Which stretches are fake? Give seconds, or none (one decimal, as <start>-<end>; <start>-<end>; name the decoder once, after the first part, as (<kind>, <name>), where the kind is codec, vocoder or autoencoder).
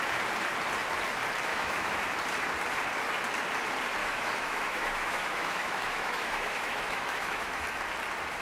1.5-2.0 (autoencoder, DAC-VAE); 4.0-7.6